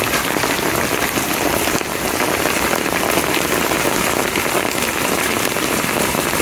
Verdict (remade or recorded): recorded